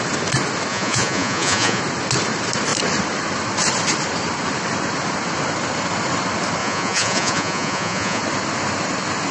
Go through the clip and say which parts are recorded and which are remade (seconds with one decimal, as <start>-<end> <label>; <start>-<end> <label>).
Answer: 0.0-0.7 recorded; 0.7-1.8 remade; 1.8-6.6 recorded; 6.6-8.2 remade; 8.2-9.3 recorded